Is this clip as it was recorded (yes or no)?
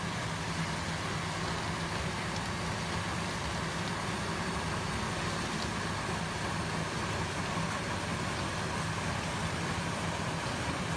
yes